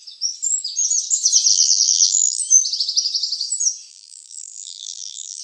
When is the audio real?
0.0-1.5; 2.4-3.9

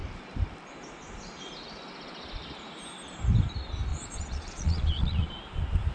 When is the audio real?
0.0-3.9; 5.4-5.9

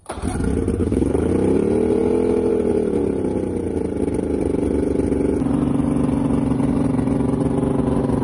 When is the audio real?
0.0-0.8; 1.3-8.2

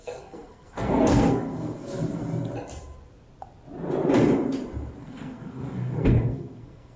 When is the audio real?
2.2-5.0

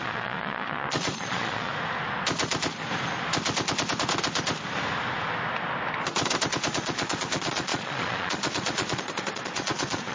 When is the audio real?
1.7-6.7

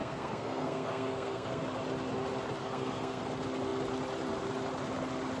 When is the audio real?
1.6-2.6; 3.2-5.4

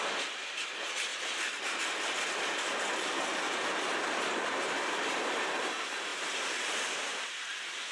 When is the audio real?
0.0-6.1; 6.9-7.9

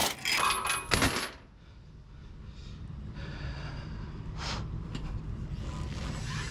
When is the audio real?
0.0-6.5